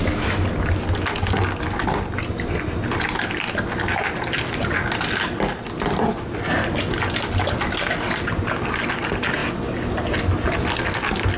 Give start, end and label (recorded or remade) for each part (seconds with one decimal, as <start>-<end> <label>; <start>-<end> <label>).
0.0-11.4 recorded